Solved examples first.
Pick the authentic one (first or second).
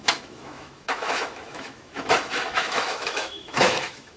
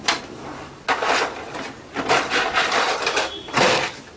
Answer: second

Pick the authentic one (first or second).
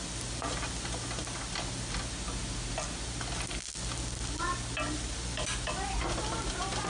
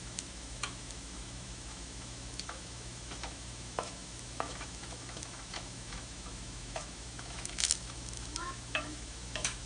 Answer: first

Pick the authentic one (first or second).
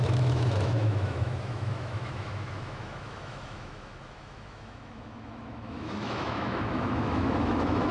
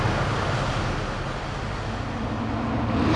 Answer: second